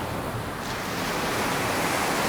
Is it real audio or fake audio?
real